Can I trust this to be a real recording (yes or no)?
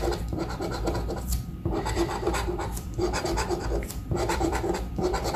no